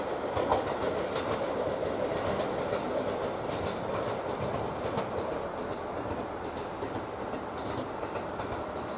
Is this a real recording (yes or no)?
yes